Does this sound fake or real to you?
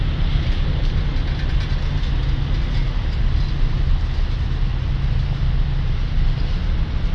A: real